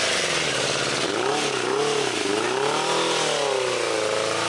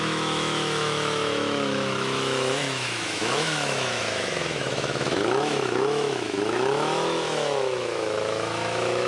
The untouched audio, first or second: first